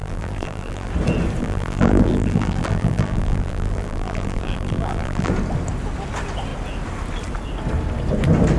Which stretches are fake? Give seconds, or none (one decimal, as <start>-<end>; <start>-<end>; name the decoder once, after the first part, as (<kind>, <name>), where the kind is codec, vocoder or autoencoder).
0.0-0.9 (vocoder, BigVGAN v2); 1.4-5.3